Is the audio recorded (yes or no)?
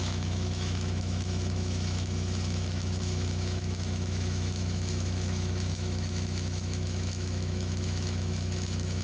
no